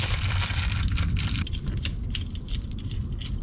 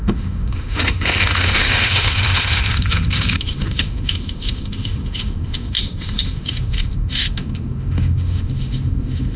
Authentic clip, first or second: first